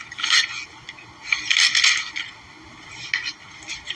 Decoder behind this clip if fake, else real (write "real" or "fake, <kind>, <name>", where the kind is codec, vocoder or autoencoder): real